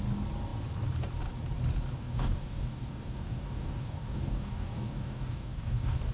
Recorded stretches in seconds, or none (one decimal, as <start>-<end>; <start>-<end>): 0.0-2.0